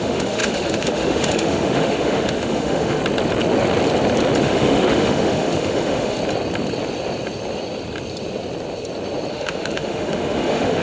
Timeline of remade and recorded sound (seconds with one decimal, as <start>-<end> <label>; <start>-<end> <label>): 0.0-3.0 remade; 3.0-4.4 recorded; 4.4-6.2 remade; 6.2-9.3 recorded; 9.3-10.8 remade